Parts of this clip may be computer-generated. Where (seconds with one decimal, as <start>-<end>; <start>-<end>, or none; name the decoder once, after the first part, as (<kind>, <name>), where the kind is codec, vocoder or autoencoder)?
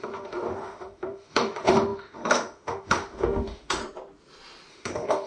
0.0-3.8 (autoencoder, DAC-VAE); 4.7-5.3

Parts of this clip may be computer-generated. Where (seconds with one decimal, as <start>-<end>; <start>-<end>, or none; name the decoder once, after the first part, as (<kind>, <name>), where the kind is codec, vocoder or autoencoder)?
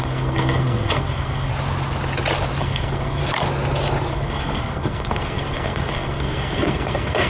0.0-1.5 (codec, SNAC); 2.6-3.2; 4.1-7.3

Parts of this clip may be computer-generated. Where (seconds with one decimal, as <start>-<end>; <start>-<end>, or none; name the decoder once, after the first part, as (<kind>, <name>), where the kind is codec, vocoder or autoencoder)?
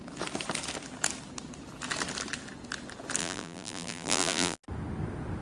3.2-4.6 (vocoder, BigVGAN v2)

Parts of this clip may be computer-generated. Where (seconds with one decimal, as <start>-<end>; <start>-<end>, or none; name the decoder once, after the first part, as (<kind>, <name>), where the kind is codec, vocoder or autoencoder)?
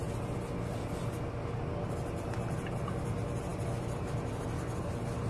none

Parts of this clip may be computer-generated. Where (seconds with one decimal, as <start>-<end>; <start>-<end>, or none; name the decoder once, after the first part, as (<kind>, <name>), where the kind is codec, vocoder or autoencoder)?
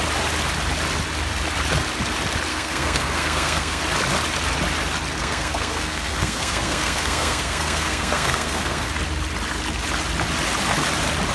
2.5-3.8 (codec, SNAC); 5.2-8.9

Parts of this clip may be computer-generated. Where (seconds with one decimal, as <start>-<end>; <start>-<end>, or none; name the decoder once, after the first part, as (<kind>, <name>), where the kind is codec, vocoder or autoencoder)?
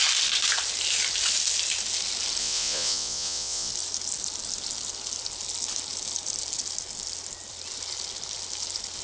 2.4-3.7 (vocoder, Vocos)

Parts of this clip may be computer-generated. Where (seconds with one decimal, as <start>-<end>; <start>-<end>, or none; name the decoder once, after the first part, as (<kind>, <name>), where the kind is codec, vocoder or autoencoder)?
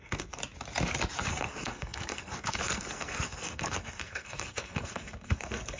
0.0-0.4 (codec, SNAC); 1.3-5.8